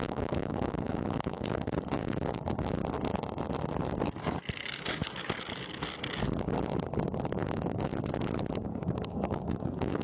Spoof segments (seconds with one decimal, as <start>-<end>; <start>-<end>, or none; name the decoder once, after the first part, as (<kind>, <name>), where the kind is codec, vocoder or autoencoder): 0.0-2.8 (codec, DAC); 7.3-7.9; 9.1-10.0